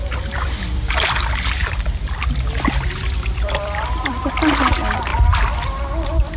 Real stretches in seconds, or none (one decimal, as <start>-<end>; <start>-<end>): 0.9-1.6; 4.3-6.4